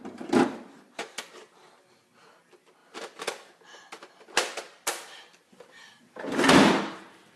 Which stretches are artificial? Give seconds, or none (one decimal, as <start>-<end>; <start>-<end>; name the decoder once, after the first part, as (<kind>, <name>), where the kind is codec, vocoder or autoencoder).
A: none